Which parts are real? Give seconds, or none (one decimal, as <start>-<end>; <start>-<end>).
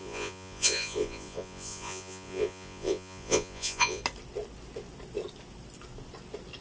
4.0-6.6